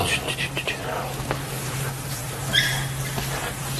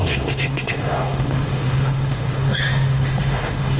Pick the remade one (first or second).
second